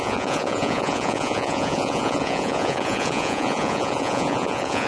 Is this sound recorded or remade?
remade